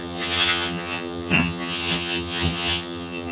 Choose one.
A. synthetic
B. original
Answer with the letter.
A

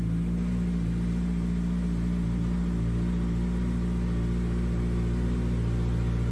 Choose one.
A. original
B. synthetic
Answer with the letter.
A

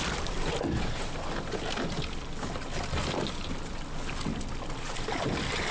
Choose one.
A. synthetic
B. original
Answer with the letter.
B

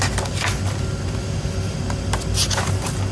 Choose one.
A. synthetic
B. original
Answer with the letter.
B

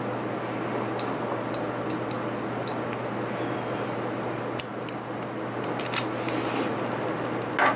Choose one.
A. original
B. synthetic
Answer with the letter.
A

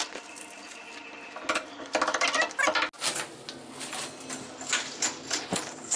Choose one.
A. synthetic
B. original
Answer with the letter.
B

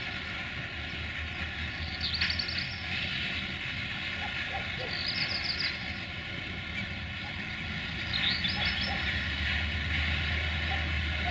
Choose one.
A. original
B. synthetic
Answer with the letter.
A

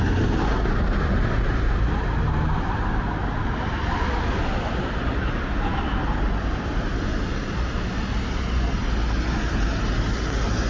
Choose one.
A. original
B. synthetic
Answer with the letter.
A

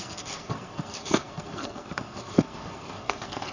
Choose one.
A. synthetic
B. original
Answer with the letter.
A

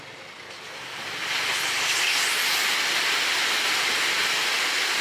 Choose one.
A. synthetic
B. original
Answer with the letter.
B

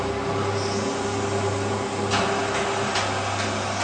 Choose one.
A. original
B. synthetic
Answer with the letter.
A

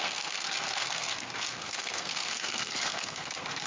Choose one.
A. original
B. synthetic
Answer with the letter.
B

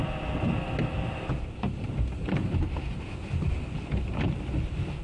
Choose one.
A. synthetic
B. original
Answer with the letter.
B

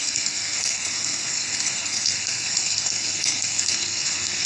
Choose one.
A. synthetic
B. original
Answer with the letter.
A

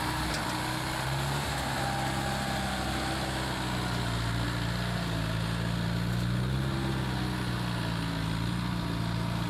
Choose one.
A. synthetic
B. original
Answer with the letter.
B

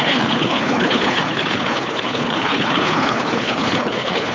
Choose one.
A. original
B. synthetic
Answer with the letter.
B